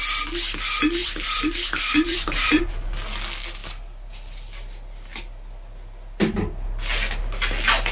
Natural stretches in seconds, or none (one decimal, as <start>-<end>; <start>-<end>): 0.0-1.0; 2.6-7.9